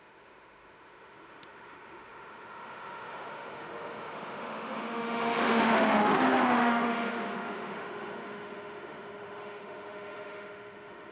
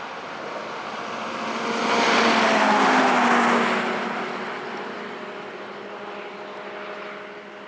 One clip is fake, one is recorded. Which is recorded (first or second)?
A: second